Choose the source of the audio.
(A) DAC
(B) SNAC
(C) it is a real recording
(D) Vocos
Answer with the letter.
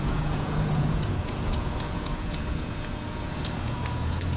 D